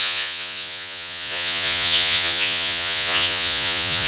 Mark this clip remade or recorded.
remade